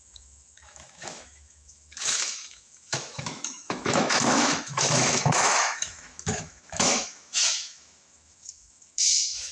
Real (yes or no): no